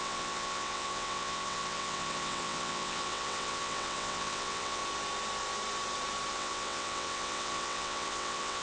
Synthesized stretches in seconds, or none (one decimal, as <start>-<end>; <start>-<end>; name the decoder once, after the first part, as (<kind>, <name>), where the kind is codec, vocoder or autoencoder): 0.0-4.8 (vocoder, WaveNeXt); 6.3-8.6